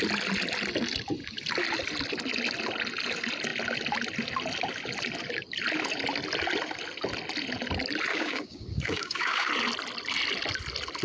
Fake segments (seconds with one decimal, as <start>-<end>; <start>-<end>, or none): 8.1-9.5